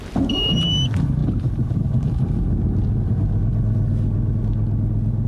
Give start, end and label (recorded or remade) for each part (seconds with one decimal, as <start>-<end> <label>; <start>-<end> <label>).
0.0-5.3 recorded